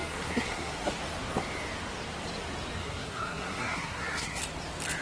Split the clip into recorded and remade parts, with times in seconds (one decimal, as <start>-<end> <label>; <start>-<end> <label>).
0.0-0.9 remade; 0.9-2.8 recorded; 2.8-4.4 remade; 4.4-5.0 recorded